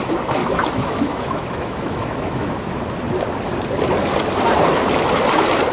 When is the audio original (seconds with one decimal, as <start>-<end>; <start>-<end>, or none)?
0.0-0.4; 2.8-5.7